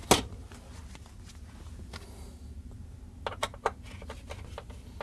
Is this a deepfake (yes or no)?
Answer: no